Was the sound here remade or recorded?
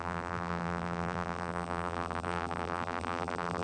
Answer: remade